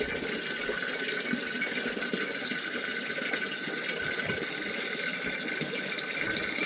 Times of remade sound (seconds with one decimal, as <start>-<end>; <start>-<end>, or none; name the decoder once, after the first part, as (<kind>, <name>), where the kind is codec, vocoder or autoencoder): none

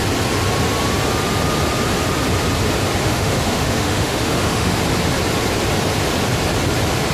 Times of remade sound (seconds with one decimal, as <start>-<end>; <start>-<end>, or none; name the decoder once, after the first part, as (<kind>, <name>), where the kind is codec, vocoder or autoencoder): 3.0-4.8 (autoencoder, DAC-VAE)

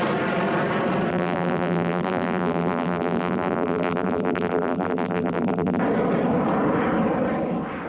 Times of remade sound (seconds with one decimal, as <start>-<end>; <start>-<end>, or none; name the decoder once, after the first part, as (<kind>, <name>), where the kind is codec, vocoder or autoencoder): 1.1-5.8 (vocoder, BigVGAN v2)

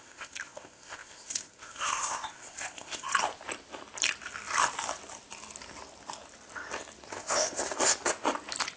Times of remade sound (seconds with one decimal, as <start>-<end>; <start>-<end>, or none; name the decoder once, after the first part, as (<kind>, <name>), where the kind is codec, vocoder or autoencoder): 0.0-3.1 (codec, ZipCodec); 7.1-7.6

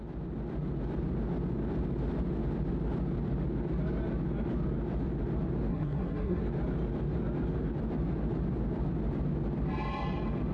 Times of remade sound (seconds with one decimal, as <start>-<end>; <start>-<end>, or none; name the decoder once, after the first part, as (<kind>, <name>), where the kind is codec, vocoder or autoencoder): 5.7-6.4 (codec, SNAC)

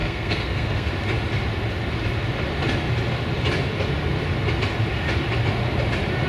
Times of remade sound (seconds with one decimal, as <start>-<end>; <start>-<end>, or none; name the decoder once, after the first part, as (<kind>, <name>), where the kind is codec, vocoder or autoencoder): 0.0-0.9 (codec, SNAC)

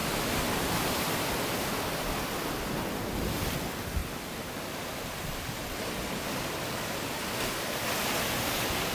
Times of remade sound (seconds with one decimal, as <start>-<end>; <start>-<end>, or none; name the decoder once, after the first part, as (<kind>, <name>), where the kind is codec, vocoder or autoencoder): 0.0-0.9 (vocoder, BigVGAN v2); 4.0-6.0

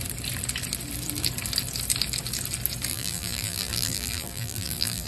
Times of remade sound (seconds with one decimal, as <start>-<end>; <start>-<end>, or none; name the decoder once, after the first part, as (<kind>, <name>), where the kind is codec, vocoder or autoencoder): 2.9-5.1 (vocoder, BigVGAN v2)